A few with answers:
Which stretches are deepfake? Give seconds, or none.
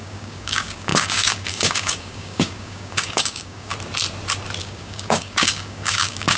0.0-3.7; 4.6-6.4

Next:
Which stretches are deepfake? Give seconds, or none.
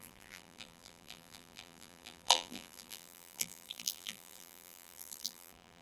0.0-5.8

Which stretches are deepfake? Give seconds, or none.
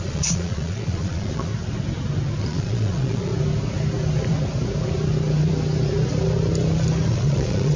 0.0-1.5; 2.4-3.3; 7.1-7.8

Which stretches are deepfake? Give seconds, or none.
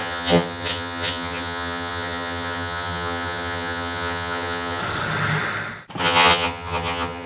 0.0-4.8; 6.0-7.3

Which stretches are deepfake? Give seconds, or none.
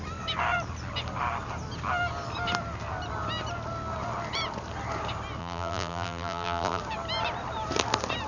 5.4-6.8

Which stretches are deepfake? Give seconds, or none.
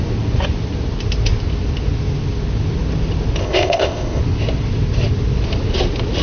3.4-4.2